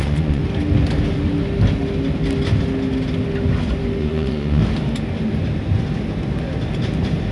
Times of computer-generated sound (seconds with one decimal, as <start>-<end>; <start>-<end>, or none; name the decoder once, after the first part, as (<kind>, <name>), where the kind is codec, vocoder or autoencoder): 0.0-0.4 (vocoder, Vocos); 4.0-4.6